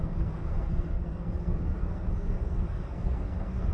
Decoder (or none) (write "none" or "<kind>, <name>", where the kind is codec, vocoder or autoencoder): codec, SNAC